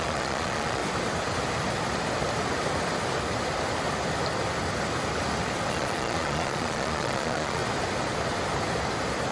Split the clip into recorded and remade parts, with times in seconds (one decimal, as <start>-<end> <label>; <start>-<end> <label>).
0.0-0.8 remade; 0.8-5.7 recorded; 5.7-7.6 remade; 7.6-9.3 recorded